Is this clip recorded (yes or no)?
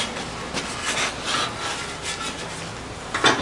yes